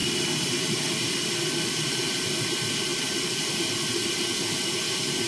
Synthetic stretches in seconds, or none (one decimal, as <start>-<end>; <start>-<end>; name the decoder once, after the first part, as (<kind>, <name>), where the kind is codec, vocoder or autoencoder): 0.0-0.9 (vocoder, BigVGAN v2)